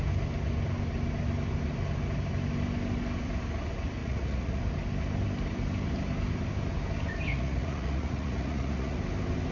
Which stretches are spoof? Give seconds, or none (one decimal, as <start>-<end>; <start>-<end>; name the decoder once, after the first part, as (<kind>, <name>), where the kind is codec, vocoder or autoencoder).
4.0-4.6 (vocoder, Vocos); 7.3-9.0